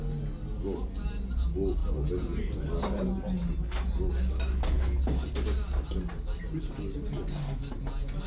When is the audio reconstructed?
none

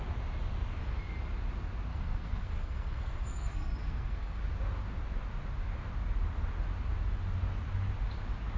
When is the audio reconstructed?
1.9-4.4 (codec, SNAC)

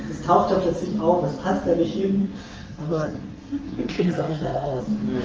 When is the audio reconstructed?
2.2-4.8 (codec, SNAC)

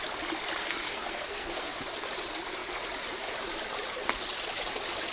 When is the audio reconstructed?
0.6-1.7 (codec, SNAC)

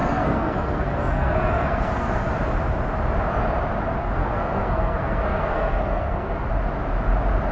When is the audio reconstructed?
0.0-2.3 (codec, SNAC); 4.0-6.5

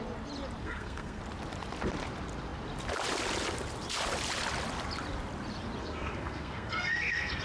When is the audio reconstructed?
0.6-1.2 (codec, SNAC); 5.8-7.4

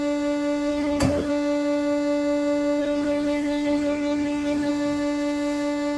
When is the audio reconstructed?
0.7-1.3 (codec, SNAC); 2.8-4.7